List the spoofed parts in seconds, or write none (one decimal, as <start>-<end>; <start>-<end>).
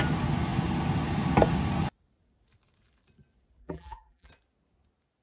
3.6-4.3